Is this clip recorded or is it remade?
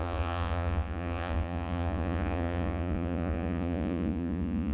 remade